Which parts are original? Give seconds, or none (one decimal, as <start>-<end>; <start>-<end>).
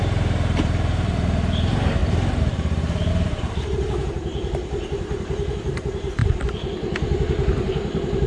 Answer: 2.0-3.1; 6.2-8.3